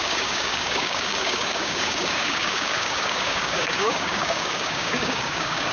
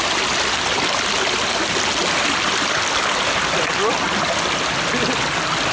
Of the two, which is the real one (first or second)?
second